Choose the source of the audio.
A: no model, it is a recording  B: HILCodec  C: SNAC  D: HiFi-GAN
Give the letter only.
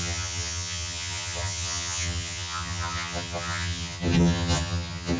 D